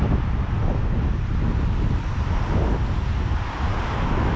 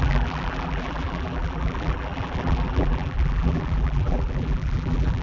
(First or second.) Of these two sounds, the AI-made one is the second